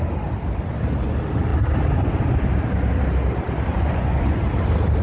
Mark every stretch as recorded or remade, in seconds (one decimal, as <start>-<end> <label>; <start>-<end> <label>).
0.0-3.7 recorded; 3.7-4.4 remade; 4.4-5.0 recorded